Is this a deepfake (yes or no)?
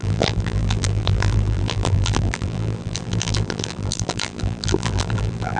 yes